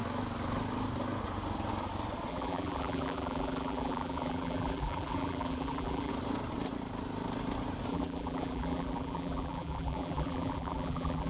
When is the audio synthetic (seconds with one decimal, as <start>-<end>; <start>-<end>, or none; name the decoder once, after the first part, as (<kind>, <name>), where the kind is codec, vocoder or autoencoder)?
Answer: 2.3-6.1 (vocoder, BigVGAN v2); 7.9-11.3